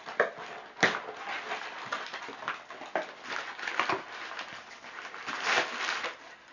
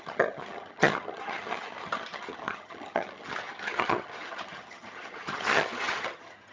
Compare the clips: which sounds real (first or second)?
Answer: first